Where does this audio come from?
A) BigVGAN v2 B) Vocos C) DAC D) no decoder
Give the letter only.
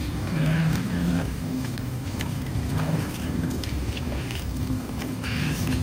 C